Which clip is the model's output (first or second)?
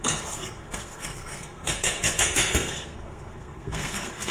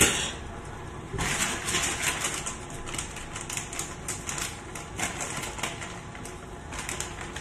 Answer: first